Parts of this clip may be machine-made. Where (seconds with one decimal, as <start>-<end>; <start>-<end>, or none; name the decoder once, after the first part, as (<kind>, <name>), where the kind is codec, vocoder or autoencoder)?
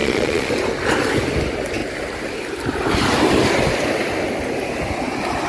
0.0-0.5 (vocoder, Vocos)